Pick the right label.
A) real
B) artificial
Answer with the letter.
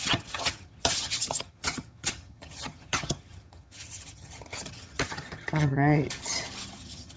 B